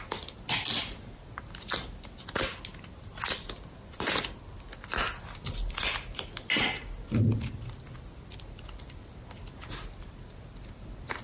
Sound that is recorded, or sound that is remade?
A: recorded